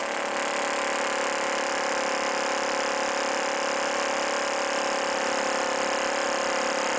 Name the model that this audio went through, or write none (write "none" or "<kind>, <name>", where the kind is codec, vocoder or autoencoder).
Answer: none